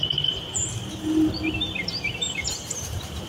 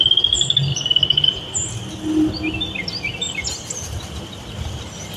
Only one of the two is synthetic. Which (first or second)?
first